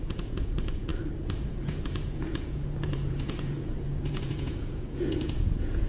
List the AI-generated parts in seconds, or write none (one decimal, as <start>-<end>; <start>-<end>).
0.0-5.9